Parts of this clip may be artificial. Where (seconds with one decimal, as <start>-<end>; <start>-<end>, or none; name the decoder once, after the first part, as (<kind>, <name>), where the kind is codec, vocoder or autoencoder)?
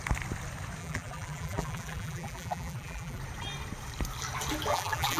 0.8-3.2 (vocoder, BigVGAN v2); 4.7-5.2